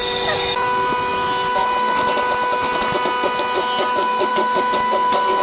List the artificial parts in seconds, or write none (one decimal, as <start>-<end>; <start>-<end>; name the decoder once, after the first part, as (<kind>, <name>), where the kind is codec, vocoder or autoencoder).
none